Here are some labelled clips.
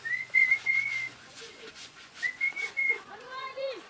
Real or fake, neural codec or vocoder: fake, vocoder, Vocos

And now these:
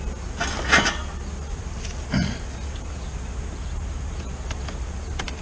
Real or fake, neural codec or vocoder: real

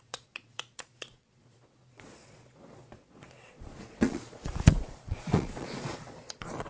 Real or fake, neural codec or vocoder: fake, vocoder, Vocos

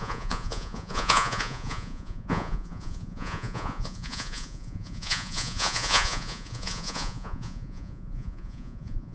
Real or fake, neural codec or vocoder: fake, vocoder, Vocos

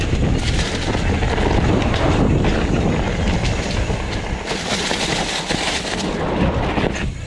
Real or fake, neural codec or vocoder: real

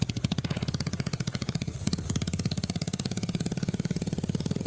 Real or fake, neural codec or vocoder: fake, vocoder, Vocos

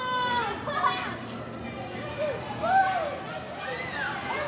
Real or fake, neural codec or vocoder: real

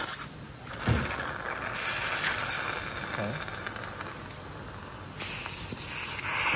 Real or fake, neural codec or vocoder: real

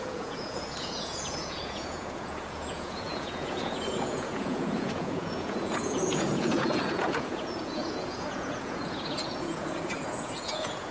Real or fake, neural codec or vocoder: fake, vocoder, Vocos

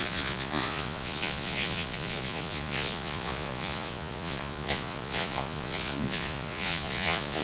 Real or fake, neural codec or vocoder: fake, vocoder, Vocos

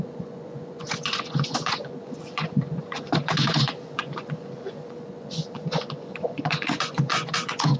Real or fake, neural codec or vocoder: fake, vocoder, Vocos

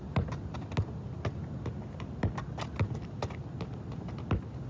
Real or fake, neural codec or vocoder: real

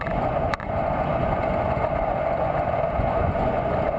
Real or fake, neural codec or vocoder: fake, vocoder, Vocos